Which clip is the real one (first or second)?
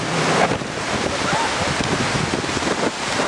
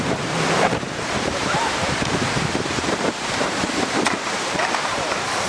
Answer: first